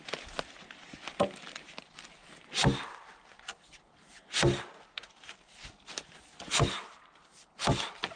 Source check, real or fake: real